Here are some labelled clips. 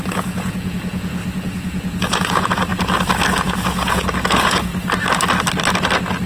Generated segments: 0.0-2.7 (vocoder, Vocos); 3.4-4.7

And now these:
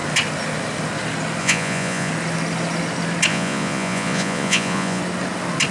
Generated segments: 1.4-2.1 (vocoder, Vocos); 3.3-5.0

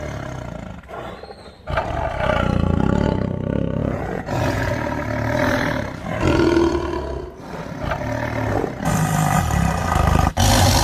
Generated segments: 3.8-4.7 (vocoder, Vocos)

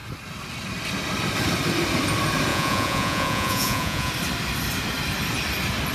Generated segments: 2.5-4.1 (vocoder, Vocos)

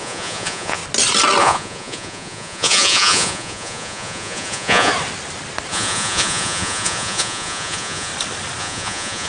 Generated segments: 0.0-0.8 (vocoder, Vocos); 1.4-4.9; 5.7-8.1; 8.6-9.3